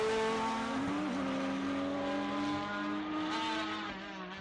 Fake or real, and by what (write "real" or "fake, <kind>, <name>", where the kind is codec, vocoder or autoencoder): real